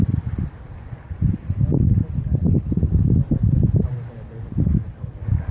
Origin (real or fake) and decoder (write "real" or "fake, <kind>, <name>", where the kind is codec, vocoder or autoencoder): real